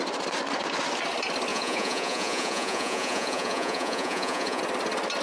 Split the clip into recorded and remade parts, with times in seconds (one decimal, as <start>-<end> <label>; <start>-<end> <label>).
0.0-1.5 recorded; 1.5-4.6 remade; 4.6-5.2 recorded